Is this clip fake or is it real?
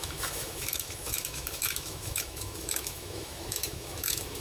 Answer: fake